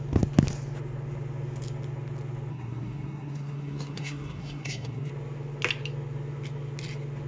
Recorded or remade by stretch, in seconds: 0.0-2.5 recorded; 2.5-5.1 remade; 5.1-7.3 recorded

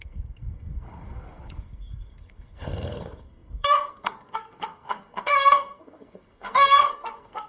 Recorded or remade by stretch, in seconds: 0.0-7.5 remade

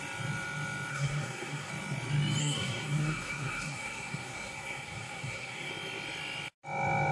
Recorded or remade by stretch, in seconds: 0.0-0.9 recorded; 0.9-1.7 remade; 1.7-2.4 recorded; 2.4-5.7 remade; 5.7-7.1 recorded

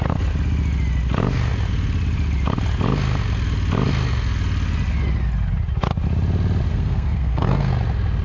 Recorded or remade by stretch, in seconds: 0.0-6.7 recorded; 6.7-7.7 remade; 7.7-8.2 recorded

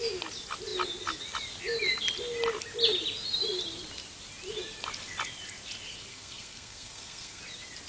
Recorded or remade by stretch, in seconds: 0.0-6.1 recorded; 6.1-7.4 remade; 7.4-7.9 recorded